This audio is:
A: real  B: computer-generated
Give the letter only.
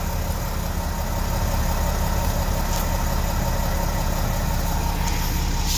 A